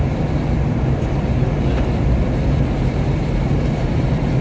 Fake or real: real